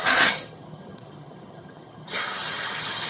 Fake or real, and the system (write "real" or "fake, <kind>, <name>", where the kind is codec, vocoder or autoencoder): fake, vocoder, HiFi-GAN